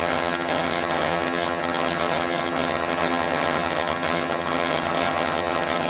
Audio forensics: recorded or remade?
remade